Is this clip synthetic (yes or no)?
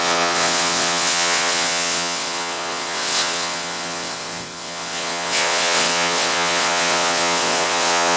yes